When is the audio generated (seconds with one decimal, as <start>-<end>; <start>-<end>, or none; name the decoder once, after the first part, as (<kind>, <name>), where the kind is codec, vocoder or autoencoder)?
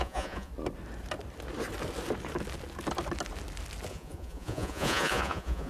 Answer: 0.0-0.5 (vocoder, Vocos); 3.9-5.7